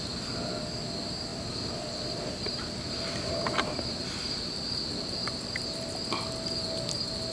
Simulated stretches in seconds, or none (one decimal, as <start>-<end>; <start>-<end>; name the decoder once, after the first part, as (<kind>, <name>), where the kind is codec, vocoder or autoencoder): 1.3-5.4 (vocoder, BigVGAN v2)